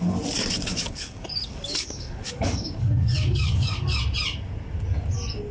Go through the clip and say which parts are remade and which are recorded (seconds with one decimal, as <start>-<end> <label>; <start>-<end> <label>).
0.0-0.7 recorded; 0.7-4.0 remade; 4.0-5.5 recorded